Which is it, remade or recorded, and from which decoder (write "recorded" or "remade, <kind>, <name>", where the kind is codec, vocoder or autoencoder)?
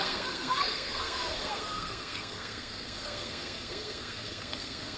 remade, codec, SNAC